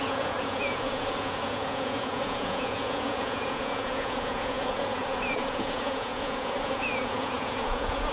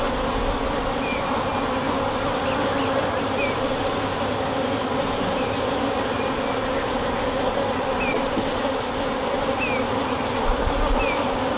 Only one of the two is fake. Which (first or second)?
first